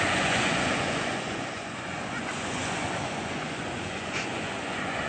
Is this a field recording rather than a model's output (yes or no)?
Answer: no